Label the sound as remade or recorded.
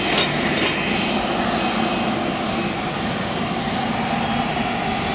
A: recorded